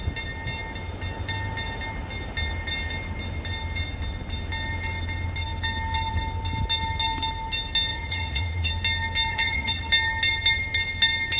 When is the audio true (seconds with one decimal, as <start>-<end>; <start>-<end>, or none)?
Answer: 0.0-7.9; 8.7-9.3; 9.9-11.4